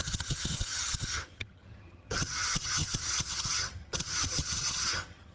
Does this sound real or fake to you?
fake